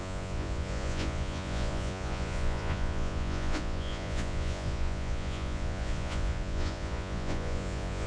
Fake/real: fake